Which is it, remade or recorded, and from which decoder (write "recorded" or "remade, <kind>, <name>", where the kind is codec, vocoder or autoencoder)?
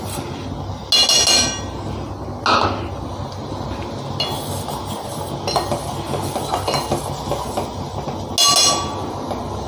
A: recorded